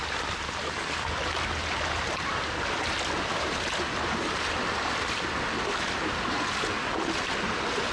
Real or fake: real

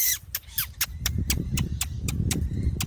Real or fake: fake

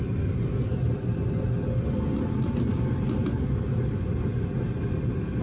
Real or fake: real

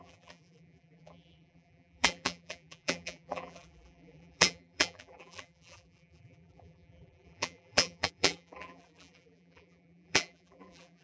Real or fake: fake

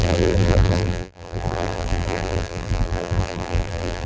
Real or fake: fake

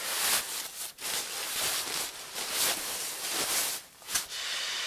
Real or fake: fake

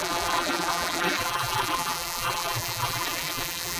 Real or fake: fake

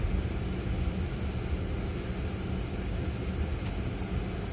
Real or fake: real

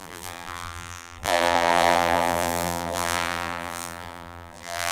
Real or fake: fake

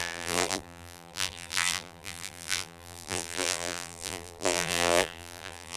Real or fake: fake